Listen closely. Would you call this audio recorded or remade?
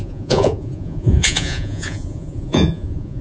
remade